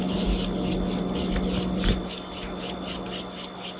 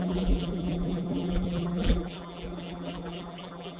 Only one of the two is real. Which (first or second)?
first